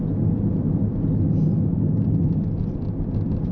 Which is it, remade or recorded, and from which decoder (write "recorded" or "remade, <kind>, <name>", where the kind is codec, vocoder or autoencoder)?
recorded